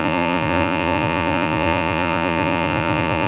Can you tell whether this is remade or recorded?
remade